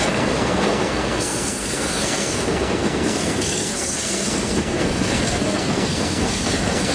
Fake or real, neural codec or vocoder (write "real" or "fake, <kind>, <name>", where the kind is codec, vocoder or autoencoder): fake, codec, SNAC